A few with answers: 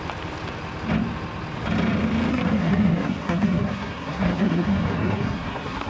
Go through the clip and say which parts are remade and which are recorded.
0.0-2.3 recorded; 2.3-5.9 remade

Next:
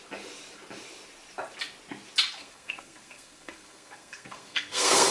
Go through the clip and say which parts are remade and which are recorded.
0.0-2.4 recorded; 2.4-5.1 remade

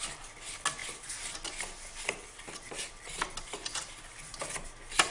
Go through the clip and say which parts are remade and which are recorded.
0.0-5.1 recorded

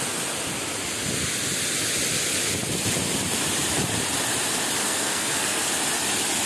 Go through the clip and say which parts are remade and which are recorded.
0.0-4.8 recorded; 4.8-5.7 remade; 5.7-6.5 recorded

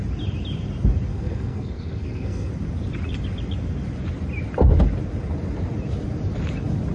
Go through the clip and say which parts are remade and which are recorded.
0.0-1.1 recorded; 1.1-2.5 remade; 2.5-6.9 recorded